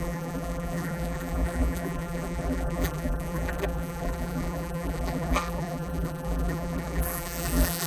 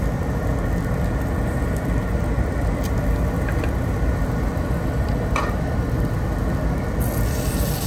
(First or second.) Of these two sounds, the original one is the second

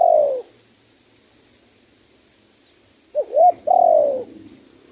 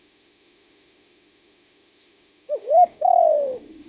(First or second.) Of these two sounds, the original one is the first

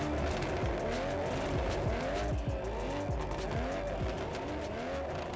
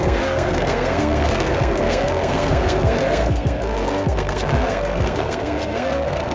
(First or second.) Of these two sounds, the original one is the first